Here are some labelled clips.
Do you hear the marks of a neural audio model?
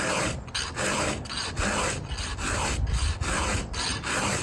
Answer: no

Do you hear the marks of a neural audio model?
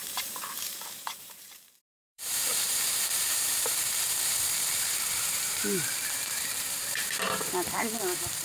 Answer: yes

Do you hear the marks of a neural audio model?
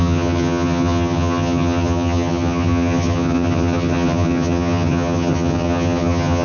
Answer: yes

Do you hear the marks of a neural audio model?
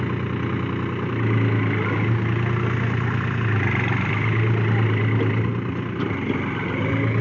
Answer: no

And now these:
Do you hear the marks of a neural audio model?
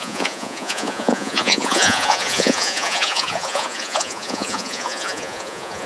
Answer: yes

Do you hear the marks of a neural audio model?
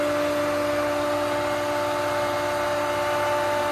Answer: no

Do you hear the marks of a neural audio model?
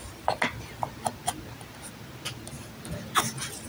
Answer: no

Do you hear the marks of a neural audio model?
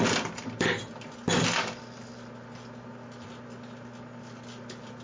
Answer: no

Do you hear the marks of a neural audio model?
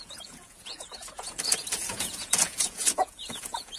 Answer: yes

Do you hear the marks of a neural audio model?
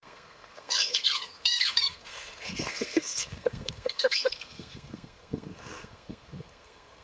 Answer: yes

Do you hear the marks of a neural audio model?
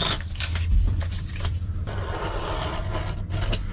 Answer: yes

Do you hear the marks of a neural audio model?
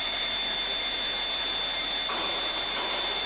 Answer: no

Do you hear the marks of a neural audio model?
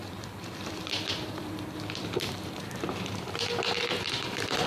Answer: yes